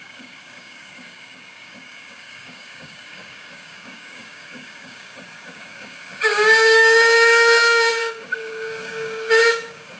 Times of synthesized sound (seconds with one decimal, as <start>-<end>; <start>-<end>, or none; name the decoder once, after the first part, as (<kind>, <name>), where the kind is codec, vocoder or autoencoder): 0.0-10.0 (codec, DAC)